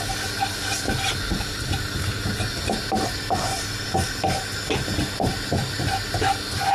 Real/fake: real